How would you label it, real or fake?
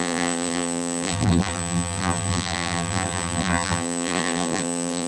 fake